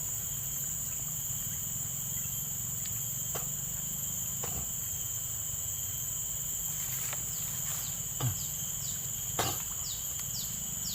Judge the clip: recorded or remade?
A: recorded